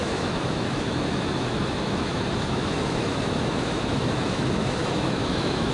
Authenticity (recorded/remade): remade